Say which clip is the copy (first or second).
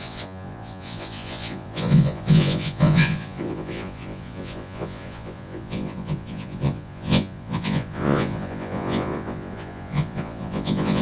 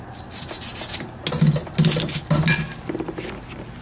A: first